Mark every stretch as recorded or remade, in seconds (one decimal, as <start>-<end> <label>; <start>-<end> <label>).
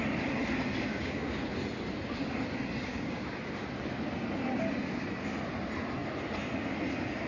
0.0-0.9 recorded; 0.9-1.5 remade; 1.5-2.9 recorded; 2.9-3.4 remade; 3.4-7.3 recorded